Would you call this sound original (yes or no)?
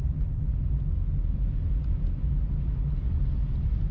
yes